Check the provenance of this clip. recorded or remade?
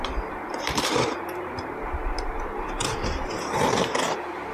remade